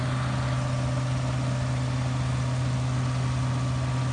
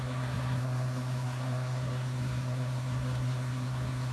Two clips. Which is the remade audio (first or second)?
second